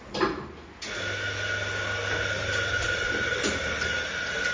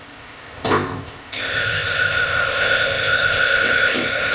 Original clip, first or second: first